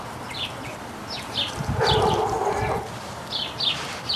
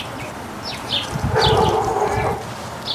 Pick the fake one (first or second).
first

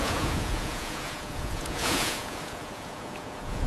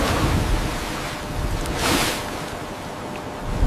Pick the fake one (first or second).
first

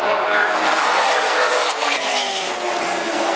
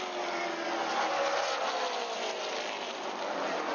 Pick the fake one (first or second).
first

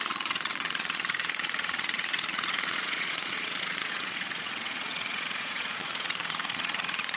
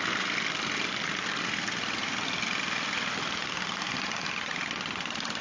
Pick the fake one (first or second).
first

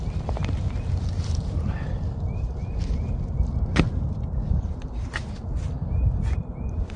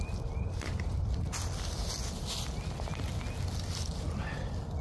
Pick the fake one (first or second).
first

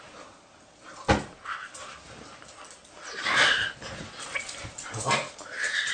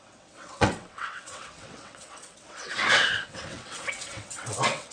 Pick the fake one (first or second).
second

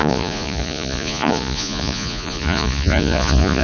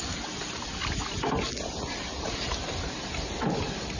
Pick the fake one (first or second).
first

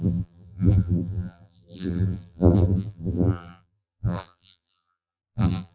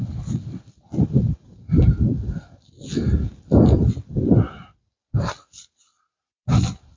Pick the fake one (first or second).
first